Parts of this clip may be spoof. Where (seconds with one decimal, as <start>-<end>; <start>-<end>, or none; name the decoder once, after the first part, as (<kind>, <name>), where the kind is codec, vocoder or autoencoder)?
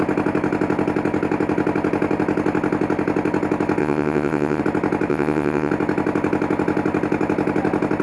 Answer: 3.8-4.6 (vocoder, WaveNeXt); 5.1-5.7